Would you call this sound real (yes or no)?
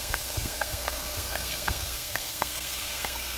no